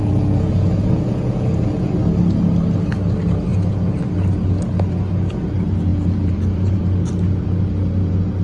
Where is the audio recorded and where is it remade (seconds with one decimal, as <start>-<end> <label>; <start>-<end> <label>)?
0.0-1.9 remade; 1.9-3.5 recorded; 3.5-4.0 remade; 4.0-5.9 recorded; 5.9-6.8 remade; 6.8-8.4 recorded